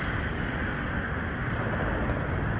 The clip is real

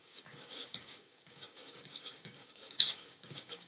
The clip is fake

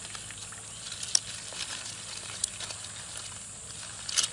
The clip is real